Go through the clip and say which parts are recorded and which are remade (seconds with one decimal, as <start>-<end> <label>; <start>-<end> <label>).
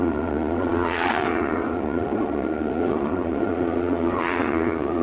0.0-5.0 remade